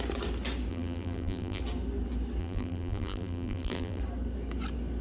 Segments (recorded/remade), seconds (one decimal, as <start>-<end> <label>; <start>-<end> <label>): 0.0-0.7 recorded; 0.7-1.6 remade; 1.6-2.4 recorded; 2.4-4.0 remade; 4.0-5.0 recorded